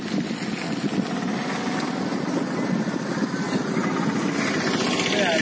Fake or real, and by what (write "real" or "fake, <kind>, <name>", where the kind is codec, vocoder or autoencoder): real